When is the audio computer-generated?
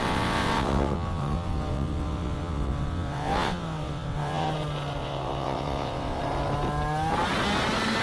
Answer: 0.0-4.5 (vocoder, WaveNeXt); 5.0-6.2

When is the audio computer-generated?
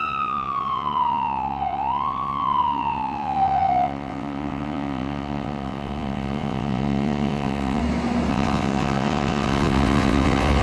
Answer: 0.0-7.8 (vocoder, WaveNeXt); 8.3-10.6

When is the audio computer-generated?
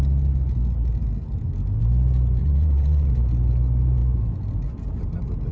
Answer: 2.4-3.1 (vocoder, WaveNeXt)